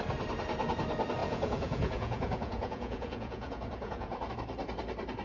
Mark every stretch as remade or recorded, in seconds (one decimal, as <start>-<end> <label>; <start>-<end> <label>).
0.0-1.2 recorded; 1.2-4.3 remade; 4.3-5.2 recorded